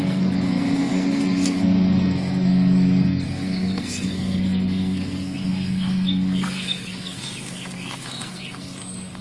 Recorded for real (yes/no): no